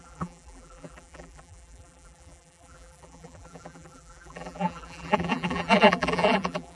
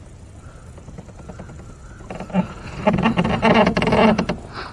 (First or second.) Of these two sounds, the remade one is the first